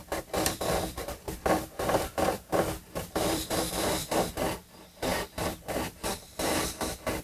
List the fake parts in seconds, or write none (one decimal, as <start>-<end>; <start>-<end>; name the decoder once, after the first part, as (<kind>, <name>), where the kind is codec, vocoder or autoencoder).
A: 0.0-4.3 (vocoder, BigVGAN v2); 5.1-7.2